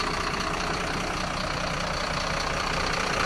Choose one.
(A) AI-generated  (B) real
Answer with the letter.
A